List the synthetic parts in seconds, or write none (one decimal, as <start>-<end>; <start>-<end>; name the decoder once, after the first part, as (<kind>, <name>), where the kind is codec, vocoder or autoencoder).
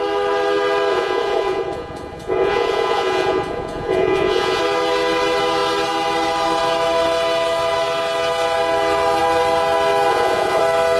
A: 0.9-4.6 (vocoder, Vocos); 10.1-10.6